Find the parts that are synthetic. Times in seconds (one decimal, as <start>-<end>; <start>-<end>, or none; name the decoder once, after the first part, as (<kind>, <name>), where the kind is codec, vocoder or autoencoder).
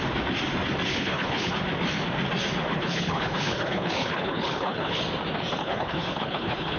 0.9-1.5 (codec, HILCodec); 2.7-5.0; 5.6-6.8